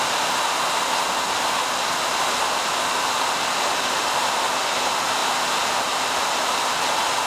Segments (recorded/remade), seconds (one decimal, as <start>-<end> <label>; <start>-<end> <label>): 0.0-7.3 recorded

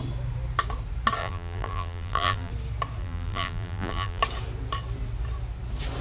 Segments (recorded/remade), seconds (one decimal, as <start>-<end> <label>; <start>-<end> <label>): 0.0-1.2 recorded; 1.2-2.5 remade; 2.5-3.0 recorded; 3.0-4.2 remade; 4.2-6.0 recorded

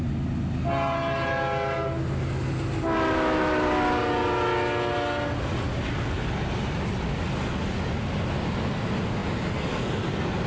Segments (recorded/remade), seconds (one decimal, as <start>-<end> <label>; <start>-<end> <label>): 0.0-10.5 recorded

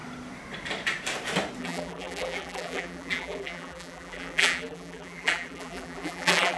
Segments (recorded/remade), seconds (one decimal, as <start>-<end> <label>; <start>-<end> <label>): 0.0-1.6 recorded; 1.6-6.6 remade

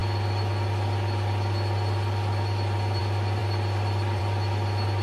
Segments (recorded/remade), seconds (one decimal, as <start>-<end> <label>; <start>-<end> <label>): 0.0-5.0 recorded